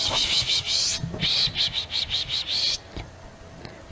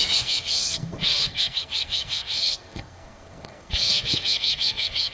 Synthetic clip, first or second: second